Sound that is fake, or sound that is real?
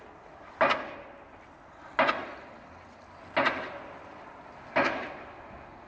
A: real